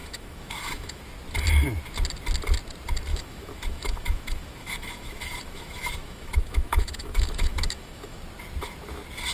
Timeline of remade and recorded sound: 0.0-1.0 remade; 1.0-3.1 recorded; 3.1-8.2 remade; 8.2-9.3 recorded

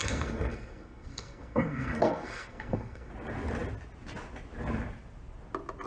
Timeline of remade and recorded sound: 0.0-3.1 remade; 3.1-5.9 recorded

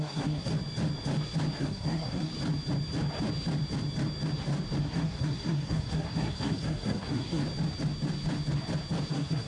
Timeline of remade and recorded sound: 0.0-0.5 remade; 0.5-1.6 recorded; 1.6-2.3 remade; 2.3-4.8 recorded; 4.8-7.4 remade; 7.4-9.1 recorded; 9.1-9.5 remade

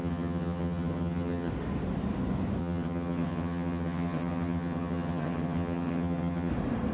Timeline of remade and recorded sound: 0.0-1.5 remade; 1.5-2.6 recorded; 2.6-6.5 remade; 6.5-6.9 recorded